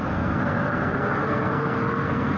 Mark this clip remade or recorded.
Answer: remade